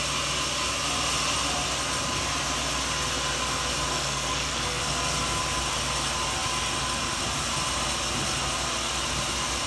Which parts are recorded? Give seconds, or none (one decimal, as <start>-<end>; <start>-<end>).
0.0-3.9; 4.8-9.7